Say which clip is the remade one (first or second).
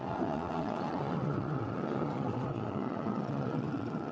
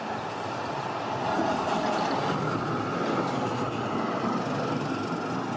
first